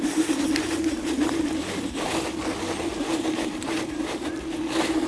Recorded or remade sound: remade